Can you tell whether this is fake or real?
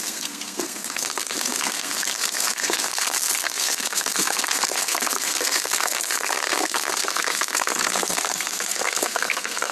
fake